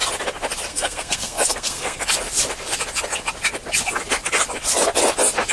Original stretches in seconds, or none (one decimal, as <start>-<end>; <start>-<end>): 0.0-0.7; 2.0-5.5